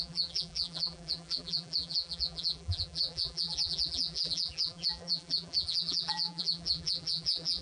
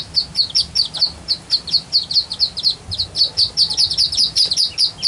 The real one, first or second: second